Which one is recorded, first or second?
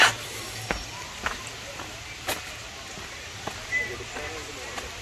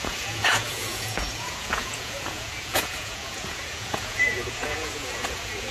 first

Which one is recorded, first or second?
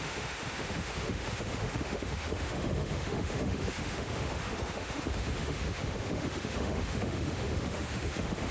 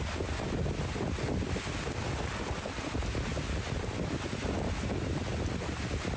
second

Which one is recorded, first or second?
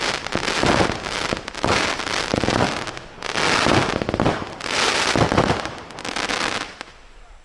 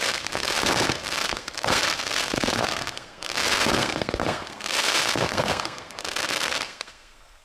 first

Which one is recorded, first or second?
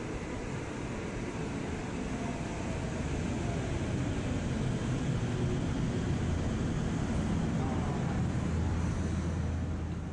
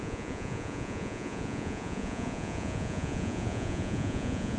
first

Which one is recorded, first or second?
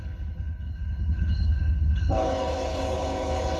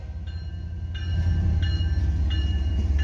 second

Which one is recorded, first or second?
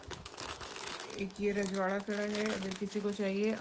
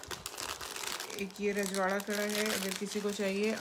second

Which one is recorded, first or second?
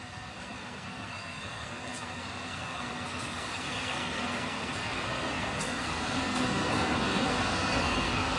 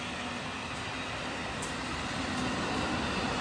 second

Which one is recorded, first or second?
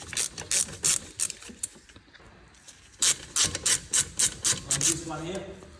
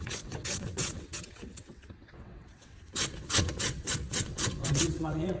first